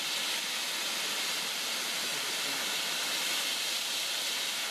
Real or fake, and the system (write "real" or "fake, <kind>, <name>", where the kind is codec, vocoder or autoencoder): real